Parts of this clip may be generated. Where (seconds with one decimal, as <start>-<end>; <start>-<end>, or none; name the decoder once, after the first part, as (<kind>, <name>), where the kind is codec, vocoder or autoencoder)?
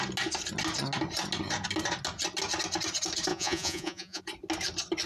3.3-4.2 (vocoder, Vocos)